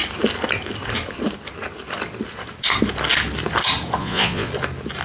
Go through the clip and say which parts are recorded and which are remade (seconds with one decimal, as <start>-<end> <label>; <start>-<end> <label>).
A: 0.0-4.0 recorded; 4.0-4.5 remade; 4.5-5.0 recorded